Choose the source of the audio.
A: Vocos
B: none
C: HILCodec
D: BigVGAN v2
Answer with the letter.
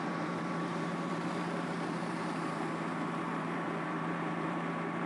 D